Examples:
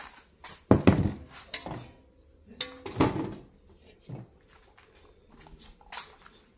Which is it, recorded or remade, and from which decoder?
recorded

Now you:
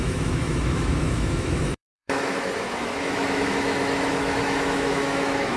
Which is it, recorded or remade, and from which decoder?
remade, autoencoder, DAC-VAE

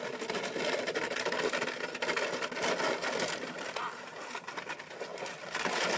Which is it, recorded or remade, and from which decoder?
remade, vocoder, BigVGAN v2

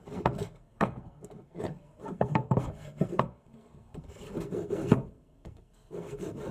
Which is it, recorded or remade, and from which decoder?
remade, codec, SNAC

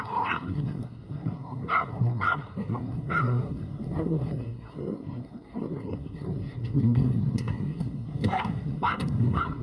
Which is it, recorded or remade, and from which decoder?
remade, codec, SNAC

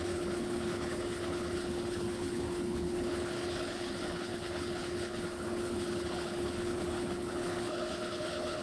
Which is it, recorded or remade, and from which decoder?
remade, codec, HILCodec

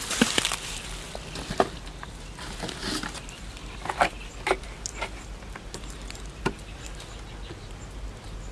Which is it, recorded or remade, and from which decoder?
recorded